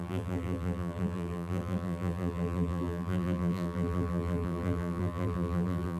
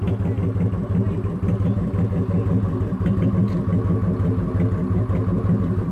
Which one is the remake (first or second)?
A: first